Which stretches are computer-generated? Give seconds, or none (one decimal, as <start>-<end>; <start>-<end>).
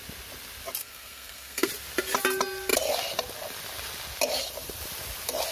0.8-1.7